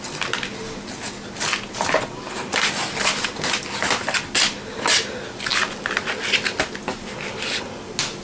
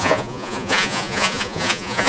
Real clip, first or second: first